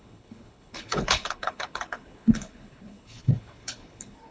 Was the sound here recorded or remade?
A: remade